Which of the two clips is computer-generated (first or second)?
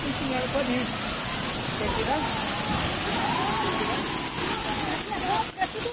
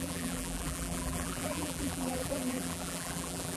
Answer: second